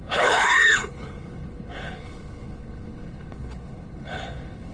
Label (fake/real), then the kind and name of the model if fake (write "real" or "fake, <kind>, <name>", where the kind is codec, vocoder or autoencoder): fake, codec, HILCodec